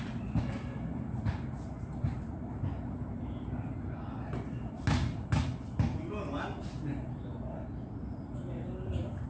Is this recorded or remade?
recorded